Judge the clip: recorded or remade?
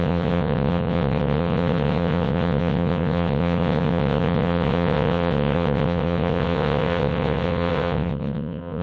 remade